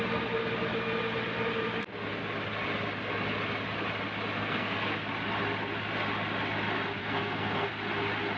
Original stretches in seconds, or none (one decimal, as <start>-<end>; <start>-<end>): 0.0-4.4; 4.9-7.0; 7.7-8.4